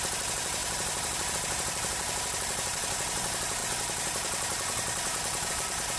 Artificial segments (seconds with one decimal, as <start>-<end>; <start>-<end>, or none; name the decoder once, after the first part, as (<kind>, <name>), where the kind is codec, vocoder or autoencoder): 0.0-6.0 (vocoder, BigVGAN v2)